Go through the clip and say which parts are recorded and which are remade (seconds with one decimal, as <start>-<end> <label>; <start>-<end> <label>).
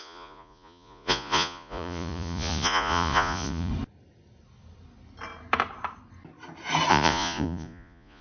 0.0-3.7 remade; 3.7-6.9 recorded; 6.9-8.2 remade